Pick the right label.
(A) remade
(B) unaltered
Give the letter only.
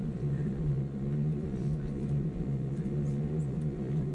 A